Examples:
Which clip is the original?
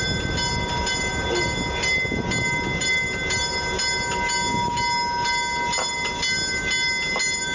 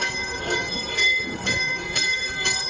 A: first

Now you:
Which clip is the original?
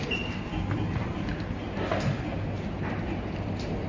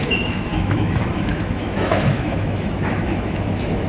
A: first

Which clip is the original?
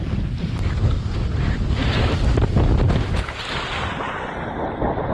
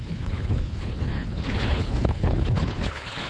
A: first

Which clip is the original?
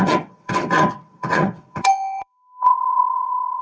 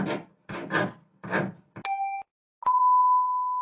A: second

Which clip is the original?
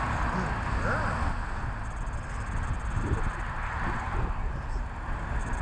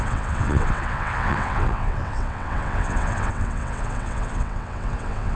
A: first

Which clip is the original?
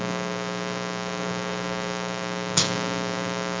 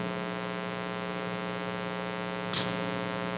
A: second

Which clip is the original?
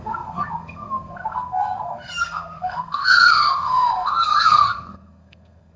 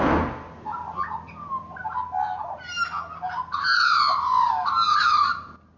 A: second